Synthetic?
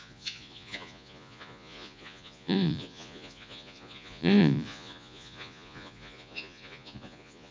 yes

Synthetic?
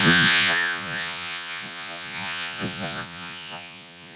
yes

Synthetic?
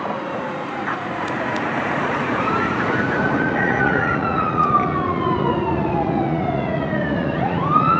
yes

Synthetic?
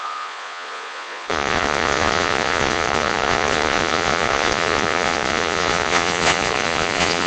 yes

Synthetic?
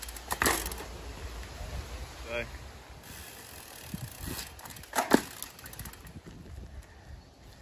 no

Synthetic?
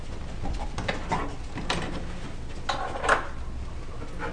no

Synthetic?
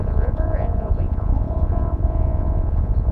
yes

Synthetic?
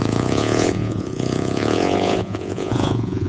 yes